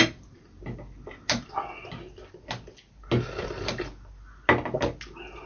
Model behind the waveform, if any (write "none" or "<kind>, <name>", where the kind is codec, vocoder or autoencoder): none